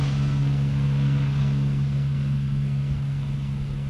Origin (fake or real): fake